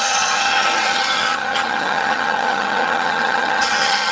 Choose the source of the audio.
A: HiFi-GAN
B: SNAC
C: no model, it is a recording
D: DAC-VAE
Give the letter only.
A